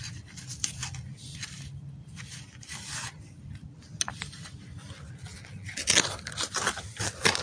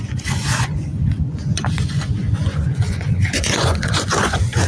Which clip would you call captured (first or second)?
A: first